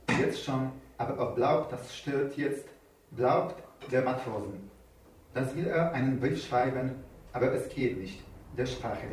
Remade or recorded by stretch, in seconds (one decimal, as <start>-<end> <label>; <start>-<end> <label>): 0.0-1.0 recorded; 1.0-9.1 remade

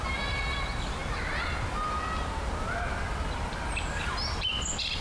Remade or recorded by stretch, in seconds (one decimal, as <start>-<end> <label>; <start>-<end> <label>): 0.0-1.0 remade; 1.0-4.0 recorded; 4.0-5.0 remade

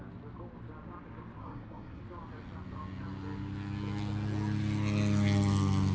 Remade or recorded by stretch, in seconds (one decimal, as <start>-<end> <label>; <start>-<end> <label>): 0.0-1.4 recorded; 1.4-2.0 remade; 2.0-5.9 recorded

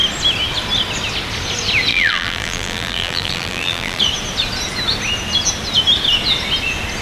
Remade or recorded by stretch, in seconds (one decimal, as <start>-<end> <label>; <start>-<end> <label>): 0.0-1.9 recorded; 1.9-4.0 remade; 4.0-7.0 recorded

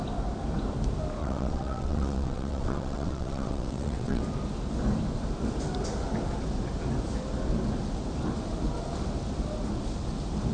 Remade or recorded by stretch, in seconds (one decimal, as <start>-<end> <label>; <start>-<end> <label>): 0.0-1.2 recorded; 1.2-4.2 remade; 4.2-10.5 recorded

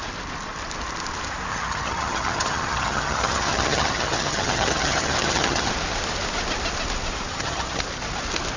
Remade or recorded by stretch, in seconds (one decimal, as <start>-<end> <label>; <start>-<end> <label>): 0.0-1.5 recorded; 1.5-5.7 remade; 5.7-7.3 recorded; 7.3-7.8 remade; 7.8-8.6 recorded

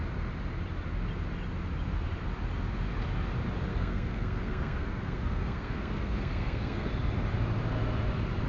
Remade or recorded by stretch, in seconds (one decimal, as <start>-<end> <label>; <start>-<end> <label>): 0.0-3.7 recorded; 3.7-6.9 remade; 6.9-8.5 recorded